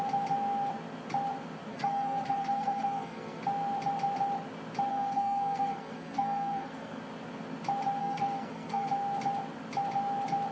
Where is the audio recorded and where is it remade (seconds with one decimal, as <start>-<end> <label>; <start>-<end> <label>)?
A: 0.0-1.7 recorded; 1.7-3.4 remade; 3.4-4.9 recorded; 4.9-7.0 remade; 7.0-8.0 recorded; 8.0-8.9 remade; 8.9-10.5 recorded